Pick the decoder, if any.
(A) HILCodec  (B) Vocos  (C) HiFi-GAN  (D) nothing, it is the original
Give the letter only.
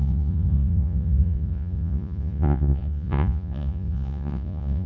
B